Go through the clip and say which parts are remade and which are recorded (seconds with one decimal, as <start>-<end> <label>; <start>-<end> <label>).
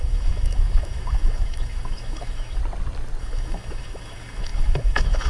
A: 0.0-2.6 remade; 2.6-3.2 recorded; 3.2-5.3 remade